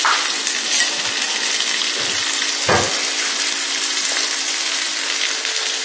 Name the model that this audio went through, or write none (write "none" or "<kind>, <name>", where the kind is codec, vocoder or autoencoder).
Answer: none